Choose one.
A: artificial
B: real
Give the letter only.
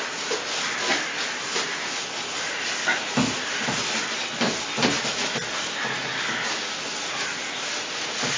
B